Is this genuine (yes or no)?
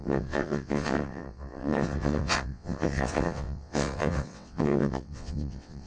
no